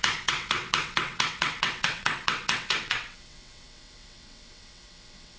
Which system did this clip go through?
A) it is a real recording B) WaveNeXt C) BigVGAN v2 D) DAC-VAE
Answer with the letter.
B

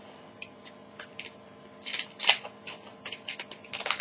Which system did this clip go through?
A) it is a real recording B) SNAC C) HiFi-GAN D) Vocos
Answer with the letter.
A